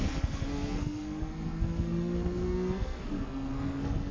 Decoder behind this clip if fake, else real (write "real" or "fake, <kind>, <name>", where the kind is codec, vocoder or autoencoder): fake, codec, SNAC